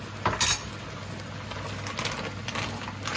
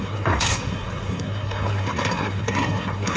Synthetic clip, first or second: second